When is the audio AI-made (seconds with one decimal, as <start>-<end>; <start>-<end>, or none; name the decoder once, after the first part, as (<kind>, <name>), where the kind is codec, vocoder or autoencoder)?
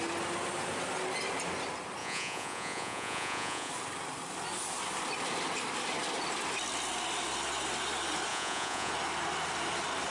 2.0-3.7 (vocoder, Vocos); 8.3-8.9